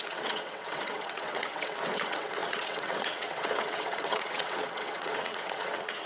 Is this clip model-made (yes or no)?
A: yes